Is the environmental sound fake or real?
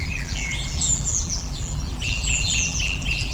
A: fake